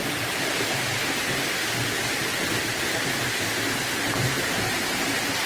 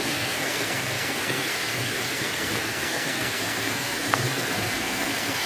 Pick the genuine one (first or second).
first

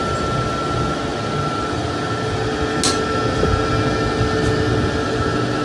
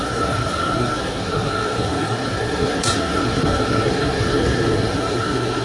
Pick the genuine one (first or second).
first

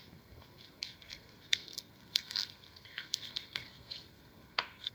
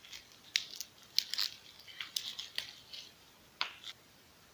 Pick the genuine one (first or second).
second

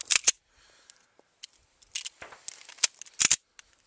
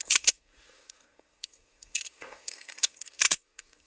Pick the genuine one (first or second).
first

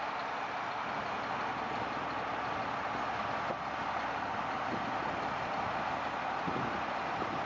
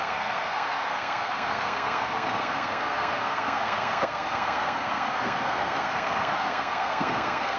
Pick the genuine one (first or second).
first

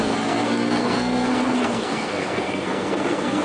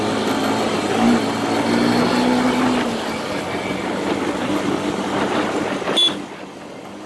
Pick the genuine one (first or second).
second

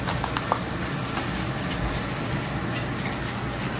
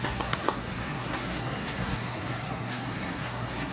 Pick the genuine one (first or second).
first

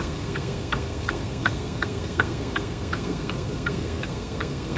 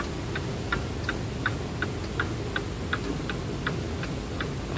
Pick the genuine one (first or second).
second